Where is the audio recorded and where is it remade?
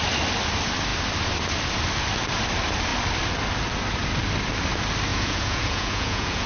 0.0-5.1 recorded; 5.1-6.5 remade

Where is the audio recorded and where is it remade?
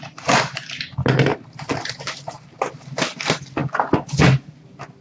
0.0-1.3 recorded; 1.3-2.6 remade; 2.6-5.0 recorded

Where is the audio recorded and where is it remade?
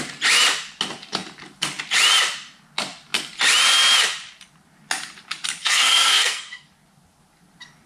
0.0-5.6 recorded; 5.6-6.7 remade; 6.7-7.9 recorded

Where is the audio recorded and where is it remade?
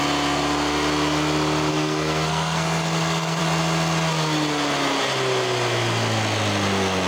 0.0-1.7 recorded; 1.7-3.4 remade; 3.4-7.1 recorded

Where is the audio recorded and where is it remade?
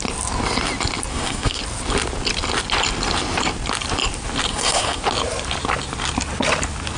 0.0-1.1 recorded; 1.1-1.6 remade; 1.6-4.5 recorded; 4.5-5.0 remade; 5.0-7.0 recorded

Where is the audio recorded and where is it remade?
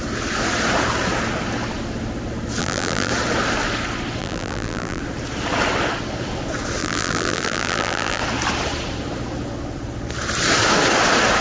0.0-2.6 recorded; 2.6-3.1 remade; 3.1-4.2 recorded; 4.2-5.0 remade; 5.0-6.8 recorded; 6.8-8.2 remade; 8.2-11.4 recorded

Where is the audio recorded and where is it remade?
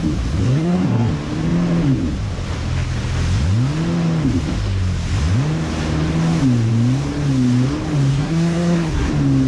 0.0-0.4 recorded; 0.4-1.1 remade; 1.1-8.1 recorded; 8.1-9.1 remade; 9.1-9.5 recorded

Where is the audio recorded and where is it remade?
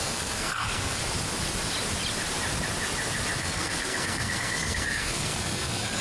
0.0-1.0 remade; 1.0-3.4 recorded; 3.4-6.0 remade